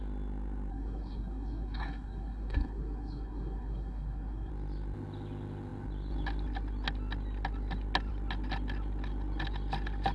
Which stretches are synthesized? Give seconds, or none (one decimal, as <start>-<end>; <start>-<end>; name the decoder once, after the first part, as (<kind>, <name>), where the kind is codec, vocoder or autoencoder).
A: 0.7-4.5 (codec, SNAC)